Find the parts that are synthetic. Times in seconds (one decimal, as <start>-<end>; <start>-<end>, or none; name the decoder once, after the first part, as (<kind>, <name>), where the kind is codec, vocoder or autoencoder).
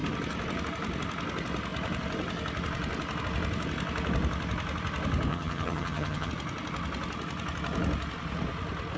5.3-6.3 (vocoder, HiFi-GAN)